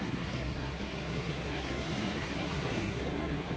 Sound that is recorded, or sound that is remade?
remade